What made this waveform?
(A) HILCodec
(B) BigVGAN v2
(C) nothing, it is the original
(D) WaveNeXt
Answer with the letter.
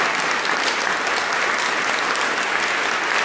C